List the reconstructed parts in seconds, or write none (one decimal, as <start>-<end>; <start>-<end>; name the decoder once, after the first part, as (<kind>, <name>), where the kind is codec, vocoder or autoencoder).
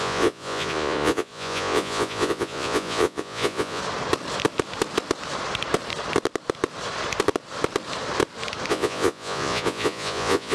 0.0-3.8 (vocoder, Vocos); 8.7-10.5